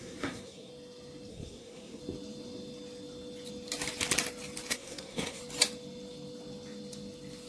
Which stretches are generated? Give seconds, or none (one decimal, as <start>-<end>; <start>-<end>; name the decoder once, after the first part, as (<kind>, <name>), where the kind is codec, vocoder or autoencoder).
0.0-0.7 (codec, SNAC); 1.3-2.0; 4.7-5.4